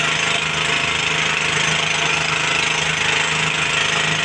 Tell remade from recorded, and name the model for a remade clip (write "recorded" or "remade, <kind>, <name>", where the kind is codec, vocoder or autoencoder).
recorded